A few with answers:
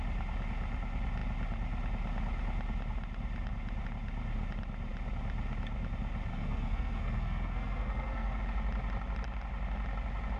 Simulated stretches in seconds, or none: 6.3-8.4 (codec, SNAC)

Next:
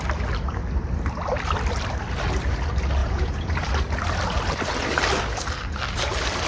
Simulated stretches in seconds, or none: 3.0-3.5 (vocoder, Vocos)

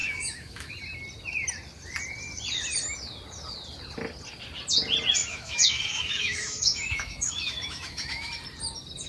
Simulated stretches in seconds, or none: 0.0-0.7 (autoencoder, DAC-VAE); 5.2-8.3

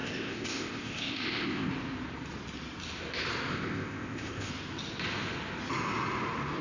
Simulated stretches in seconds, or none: 0.0-1.7 (codec, ZipCodec); 3.5-4.5

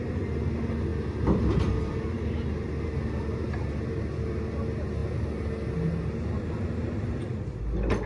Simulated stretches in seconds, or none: none

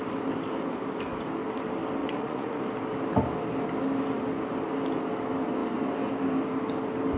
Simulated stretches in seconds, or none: 2.0-2.6 (vocoder, Vocos)

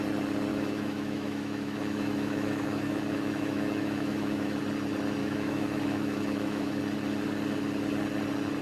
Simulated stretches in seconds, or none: 0.5-4.6 (autoencoder, DAC-VAE); 5.2-6.8